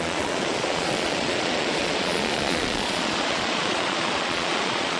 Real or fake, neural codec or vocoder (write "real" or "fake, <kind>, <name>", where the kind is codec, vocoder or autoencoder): fake, vocoder, Vocos